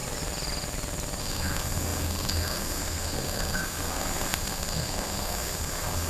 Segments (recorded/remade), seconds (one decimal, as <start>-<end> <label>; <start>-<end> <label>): 0.0-1.2 recorded; 1.2-6.1 remade